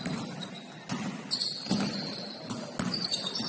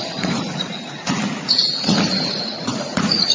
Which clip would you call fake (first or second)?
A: second